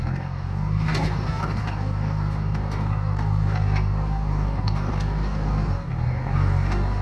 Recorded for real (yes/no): no